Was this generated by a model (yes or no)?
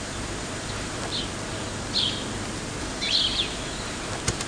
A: yes